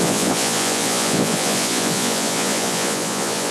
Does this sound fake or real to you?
fake